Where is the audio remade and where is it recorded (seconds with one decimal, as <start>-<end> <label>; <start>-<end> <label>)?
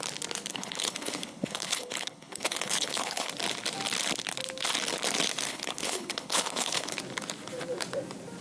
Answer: 0.0-0.5 recorded; 0.5-3.3 remade; 3.3-5.5 recorded; 5.5-7.0 remade; 7.0-8.4 recorded